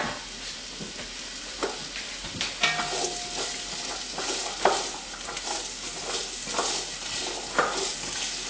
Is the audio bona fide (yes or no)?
yes